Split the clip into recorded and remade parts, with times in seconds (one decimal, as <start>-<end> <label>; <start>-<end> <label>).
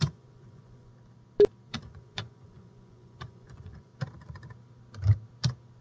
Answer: 0.0-0.9 remade; 0.9-1.7 recorded; 1.7-3.9 remade; 3.9-5.8 recorded